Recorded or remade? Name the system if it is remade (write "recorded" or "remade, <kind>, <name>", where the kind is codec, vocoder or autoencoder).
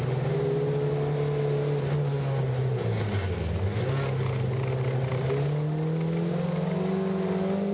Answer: recorded